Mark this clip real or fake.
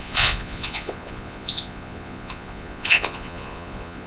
fake